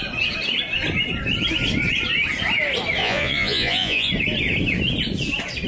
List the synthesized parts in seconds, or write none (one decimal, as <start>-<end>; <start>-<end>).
3.0-4.1